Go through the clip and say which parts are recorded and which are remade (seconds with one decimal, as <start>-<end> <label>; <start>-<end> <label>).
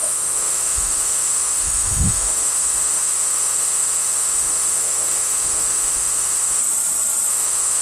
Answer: 0.0-6.6 remade; 6.6-7.3 recorded; 7.3-7.8 remade